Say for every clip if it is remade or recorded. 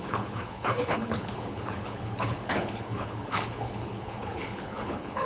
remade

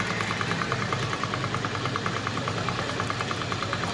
recorded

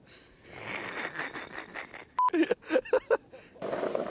recorded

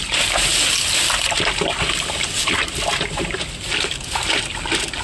recorded